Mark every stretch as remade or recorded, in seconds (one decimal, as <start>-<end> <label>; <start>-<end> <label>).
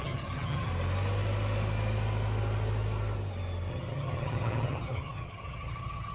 0.0-0.7 remade; 0.7-3.7 recorded; 3.7-6.1 remade